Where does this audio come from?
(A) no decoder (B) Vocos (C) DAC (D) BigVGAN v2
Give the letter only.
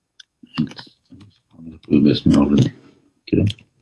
C